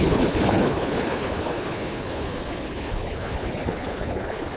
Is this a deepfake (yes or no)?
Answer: yes